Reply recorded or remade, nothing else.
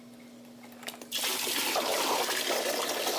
recorded